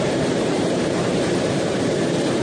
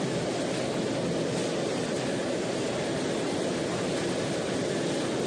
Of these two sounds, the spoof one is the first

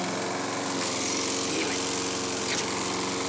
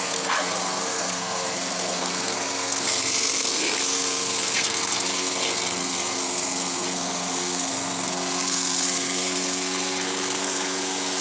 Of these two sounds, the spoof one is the second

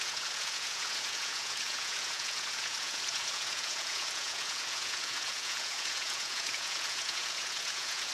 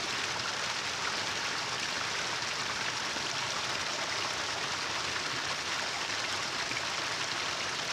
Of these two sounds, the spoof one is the first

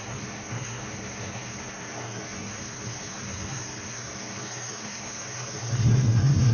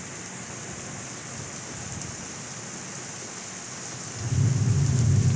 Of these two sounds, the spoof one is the first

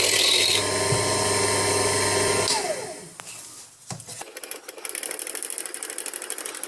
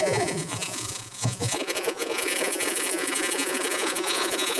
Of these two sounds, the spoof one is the second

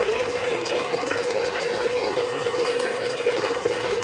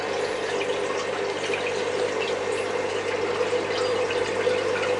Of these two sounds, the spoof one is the first